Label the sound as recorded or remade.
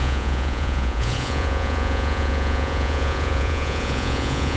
remade